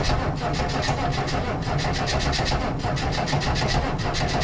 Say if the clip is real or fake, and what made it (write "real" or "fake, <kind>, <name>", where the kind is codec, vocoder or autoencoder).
real